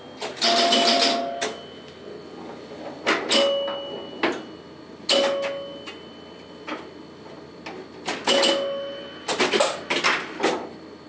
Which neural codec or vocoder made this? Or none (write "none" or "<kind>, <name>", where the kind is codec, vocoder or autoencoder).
none